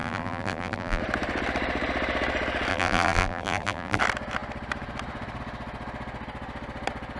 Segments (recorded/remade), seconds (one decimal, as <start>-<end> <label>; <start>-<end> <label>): 0.0-1.0 remade; 1.0-2.7 recorded; 2.7-4.0 remade; 4.0-7.2 recorded